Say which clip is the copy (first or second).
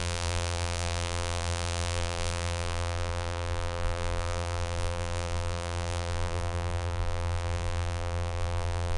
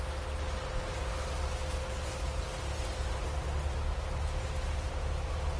first